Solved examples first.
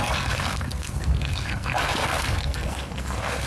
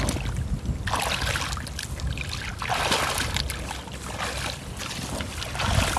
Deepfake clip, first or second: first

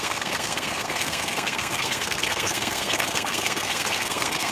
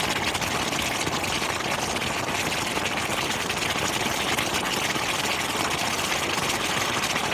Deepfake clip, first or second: first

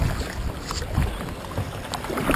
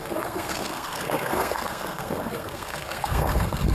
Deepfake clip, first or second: second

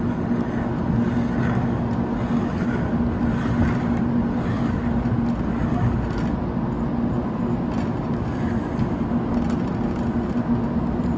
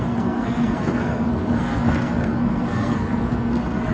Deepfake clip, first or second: second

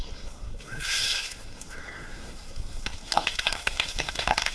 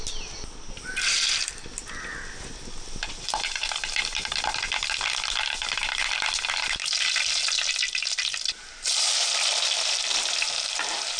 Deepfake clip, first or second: first